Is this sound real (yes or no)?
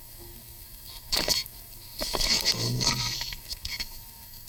no